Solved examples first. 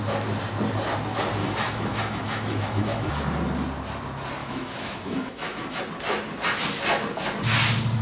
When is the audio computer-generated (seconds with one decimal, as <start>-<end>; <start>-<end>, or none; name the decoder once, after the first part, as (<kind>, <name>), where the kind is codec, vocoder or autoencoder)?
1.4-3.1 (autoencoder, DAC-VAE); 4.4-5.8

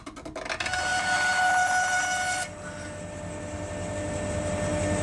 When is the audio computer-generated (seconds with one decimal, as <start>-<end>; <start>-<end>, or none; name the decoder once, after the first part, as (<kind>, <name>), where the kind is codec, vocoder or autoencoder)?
none

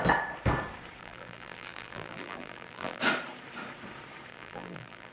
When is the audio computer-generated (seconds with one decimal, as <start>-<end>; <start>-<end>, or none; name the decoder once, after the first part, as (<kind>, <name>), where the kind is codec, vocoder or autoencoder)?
1.0-3.0 (vocoder, BigVGAN v2); 4.3-5.1